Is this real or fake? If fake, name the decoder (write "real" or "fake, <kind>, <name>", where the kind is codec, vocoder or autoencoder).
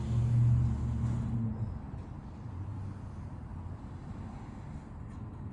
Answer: real